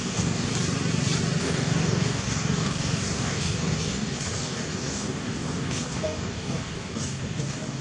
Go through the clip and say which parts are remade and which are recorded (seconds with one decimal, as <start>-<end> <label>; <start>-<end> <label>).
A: 0.0-0.5 remade; 0.5-1.4 recorded; 1.4-7.8 remade